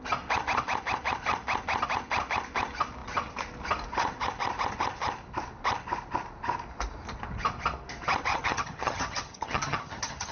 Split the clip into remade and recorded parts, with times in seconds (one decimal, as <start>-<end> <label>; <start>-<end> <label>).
0.0-8.3 recorded; 8.3-10.3 remade